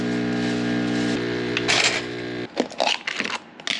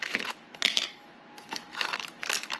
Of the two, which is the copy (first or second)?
second